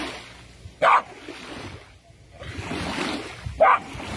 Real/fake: real